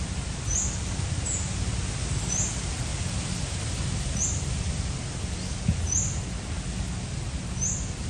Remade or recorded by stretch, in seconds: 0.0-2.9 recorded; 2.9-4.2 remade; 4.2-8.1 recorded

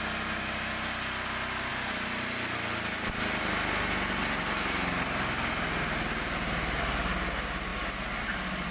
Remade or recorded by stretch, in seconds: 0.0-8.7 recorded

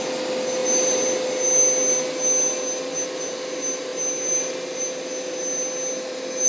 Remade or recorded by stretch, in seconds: 0.0-6.5 recorded